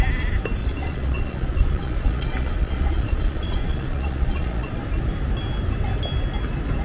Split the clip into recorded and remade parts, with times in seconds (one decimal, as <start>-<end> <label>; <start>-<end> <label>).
0.0-0.6 recorded; 0.6-4.7 remade; 4.7-6.8 recorded